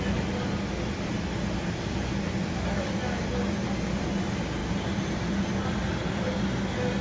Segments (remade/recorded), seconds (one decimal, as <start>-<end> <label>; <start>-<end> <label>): 0.0-7.0 recorded